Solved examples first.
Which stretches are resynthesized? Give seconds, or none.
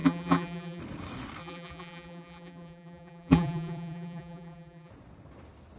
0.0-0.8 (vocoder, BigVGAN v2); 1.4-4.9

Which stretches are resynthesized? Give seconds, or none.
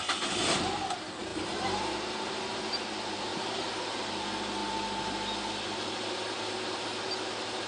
1.3-2.1 (vocoder, BigVGAN v2); 3.3-4.0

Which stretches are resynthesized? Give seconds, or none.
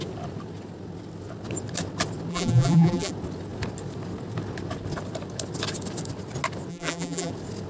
2.3-3.1 (vocoder, BigVGAN v2); 6.7-7.3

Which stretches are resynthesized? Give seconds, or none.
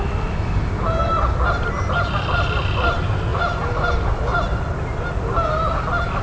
3.3-4.6 (vocoder, BigVGAN v2)